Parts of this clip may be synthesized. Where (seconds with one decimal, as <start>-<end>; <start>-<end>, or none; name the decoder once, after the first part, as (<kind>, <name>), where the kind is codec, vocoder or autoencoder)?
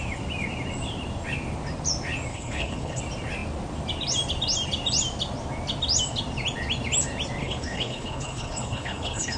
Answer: 2.3-3.0 (codec, HILCodec); 7.4-9.4